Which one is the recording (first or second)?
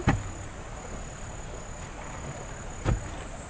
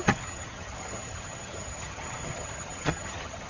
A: first